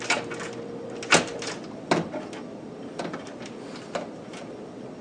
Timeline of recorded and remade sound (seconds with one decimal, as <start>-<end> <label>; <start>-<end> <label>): 0.0-5.0 recorded